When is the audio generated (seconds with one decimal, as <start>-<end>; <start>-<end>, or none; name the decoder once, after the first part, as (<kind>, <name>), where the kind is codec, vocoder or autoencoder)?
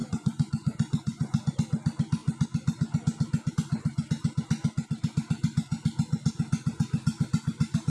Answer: 0.0-1.5 (vocoder, Vocos)